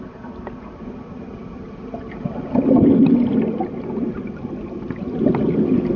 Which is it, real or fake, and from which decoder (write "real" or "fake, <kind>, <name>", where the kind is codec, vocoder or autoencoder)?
real